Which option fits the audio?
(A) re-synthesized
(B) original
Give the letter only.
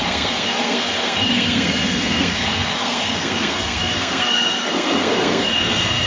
A